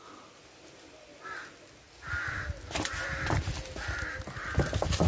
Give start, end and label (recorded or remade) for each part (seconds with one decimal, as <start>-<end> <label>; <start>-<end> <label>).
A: 0.0-5.1 recorded

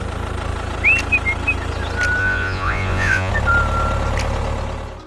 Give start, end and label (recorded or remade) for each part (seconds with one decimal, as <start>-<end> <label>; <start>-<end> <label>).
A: 0.0-2.2 recorded; 2.2-3.3 remade; 3.3-5.1 recorded

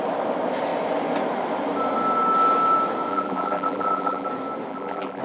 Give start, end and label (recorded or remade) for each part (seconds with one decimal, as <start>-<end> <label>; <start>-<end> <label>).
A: 0.0-3.1 recorded; 3.1-4.3 remade; 4.3-4.7 recorded; 4.7-5.2 remade

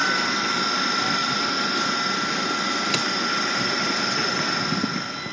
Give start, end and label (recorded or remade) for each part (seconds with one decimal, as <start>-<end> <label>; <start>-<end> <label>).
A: 0.0-0.7 remade; 0.7-1.2 recorded; 1.2-4.0 remade; 4.0-5.3 recorded